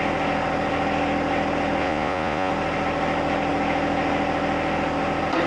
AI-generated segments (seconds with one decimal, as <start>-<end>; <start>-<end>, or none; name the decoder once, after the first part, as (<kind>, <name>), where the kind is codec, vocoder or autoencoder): 1.8-2.5 (vocoder, Vocos)